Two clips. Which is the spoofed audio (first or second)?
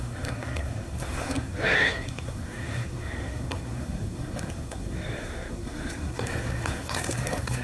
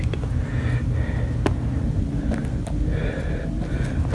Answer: first